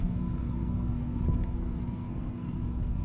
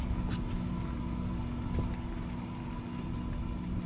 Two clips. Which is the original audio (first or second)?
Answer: second